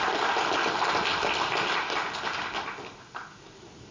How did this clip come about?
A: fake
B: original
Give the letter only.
B